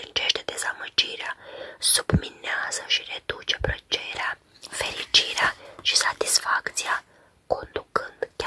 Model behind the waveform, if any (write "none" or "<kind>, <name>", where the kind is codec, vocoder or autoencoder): none